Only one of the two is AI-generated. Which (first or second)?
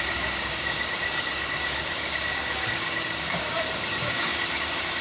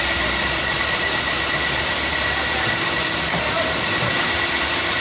first